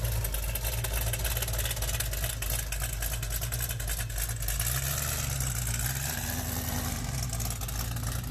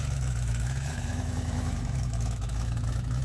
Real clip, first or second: first